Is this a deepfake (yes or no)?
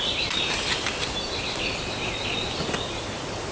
no